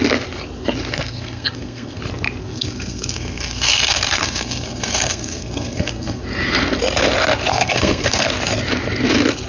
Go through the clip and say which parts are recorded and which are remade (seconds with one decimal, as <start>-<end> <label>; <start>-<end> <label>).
0.0-0.9 recorded; 0.9-2.0 remade; 2.0-2.4 recorded; 2.4-6.2 remade; 6.2-7.5 recorded; 7.5-8.3 remade; 8.3-9.5 recorded